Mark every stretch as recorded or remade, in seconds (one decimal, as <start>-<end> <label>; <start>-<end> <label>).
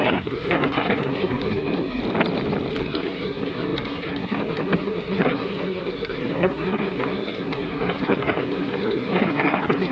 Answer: 0.0-2.0 remade; 2.0-2.8 recorded; 2.8-9.9 remade